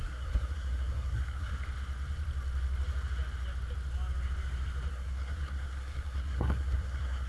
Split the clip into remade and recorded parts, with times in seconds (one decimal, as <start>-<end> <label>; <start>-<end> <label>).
0.0-1.5 remade; 1.5-4.9 recorded; 4.9-7.3 remade